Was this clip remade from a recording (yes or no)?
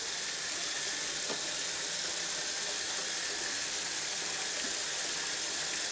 no